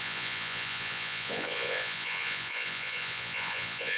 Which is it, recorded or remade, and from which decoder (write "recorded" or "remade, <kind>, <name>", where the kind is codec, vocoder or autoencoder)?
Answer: remade, vocoder, Vocos